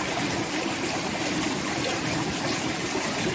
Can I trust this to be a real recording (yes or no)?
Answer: yes